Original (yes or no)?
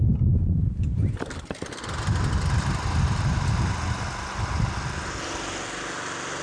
yes